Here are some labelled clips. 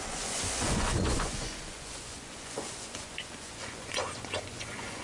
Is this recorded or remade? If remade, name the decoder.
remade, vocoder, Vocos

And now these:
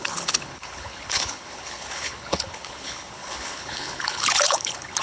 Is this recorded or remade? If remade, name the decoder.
remade, codec, HILCodec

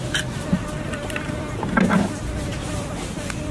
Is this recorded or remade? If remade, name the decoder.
recorded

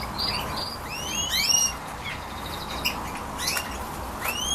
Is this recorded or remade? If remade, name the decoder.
recorded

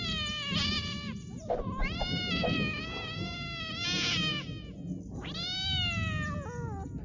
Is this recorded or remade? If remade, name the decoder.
recorded